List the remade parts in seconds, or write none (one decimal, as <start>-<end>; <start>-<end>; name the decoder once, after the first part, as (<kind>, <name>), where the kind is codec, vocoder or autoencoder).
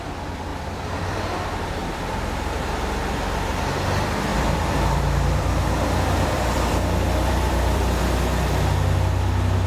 0.5-1.0 (vocoder, BigVGAN v2); 1.8-3.6; 4.3-8.0